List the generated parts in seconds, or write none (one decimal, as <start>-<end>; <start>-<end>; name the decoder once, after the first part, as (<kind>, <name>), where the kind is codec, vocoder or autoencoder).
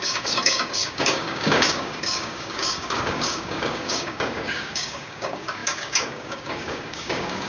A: 0.0-7.5 (codec, DAC)